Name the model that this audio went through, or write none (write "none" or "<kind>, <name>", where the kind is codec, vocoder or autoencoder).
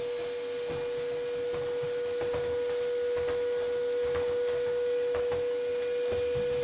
none